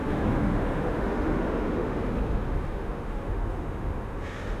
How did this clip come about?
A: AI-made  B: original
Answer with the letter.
A